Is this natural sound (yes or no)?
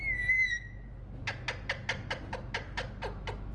yes